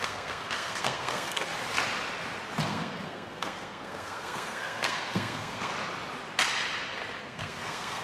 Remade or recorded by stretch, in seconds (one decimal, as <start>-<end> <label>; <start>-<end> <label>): 0.0-1.5 remade; 1.5-2.7 recorded; 2.7-5.7 remade; 5.7-7.2 recorded; 7.2-8.0 remade